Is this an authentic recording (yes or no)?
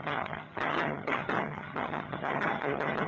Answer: no